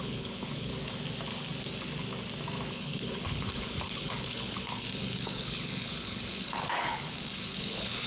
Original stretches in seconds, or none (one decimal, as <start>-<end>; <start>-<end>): 0.7-2.7